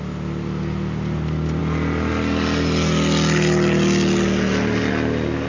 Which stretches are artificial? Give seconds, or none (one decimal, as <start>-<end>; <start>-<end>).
none